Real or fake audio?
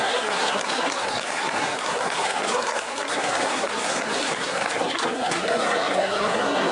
fake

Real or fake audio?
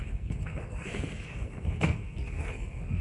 fake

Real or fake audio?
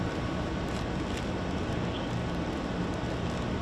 real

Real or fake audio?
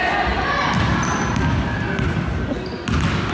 real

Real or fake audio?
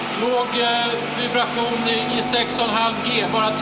real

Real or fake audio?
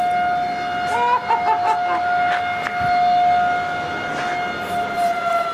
real